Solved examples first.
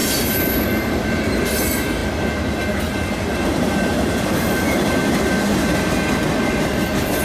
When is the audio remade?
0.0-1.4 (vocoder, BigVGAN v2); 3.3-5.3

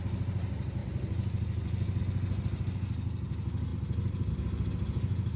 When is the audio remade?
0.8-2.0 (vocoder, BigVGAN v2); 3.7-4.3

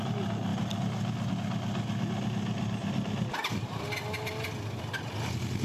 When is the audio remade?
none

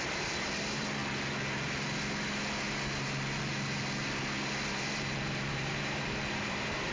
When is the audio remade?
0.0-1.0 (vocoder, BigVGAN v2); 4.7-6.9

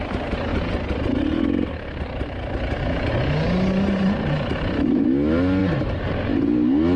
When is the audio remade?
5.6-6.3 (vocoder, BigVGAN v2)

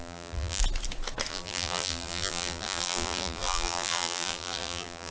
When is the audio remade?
0.0-0.6 (vocoder, BigVGAN v2); 1.3-5.1

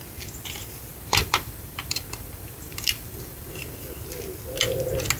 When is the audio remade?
0.9-3.8 (vocoder, BigVGAN v2)

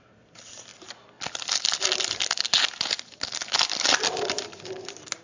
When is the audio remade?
none